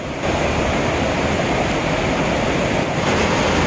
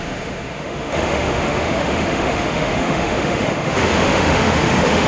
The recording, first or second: first